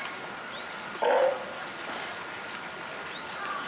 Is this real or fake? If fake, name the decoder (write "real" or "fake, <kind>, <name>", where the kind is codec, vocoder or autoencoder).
real